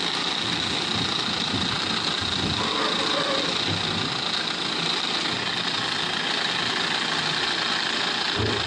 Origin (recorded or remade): recorded